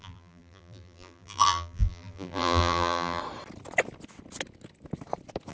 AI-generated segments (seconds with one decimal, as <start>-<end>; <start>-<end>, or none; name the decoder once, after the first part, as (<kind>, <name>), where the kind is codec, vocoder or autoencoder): 0.0-3.2 (vocoder, BigVGAN v2)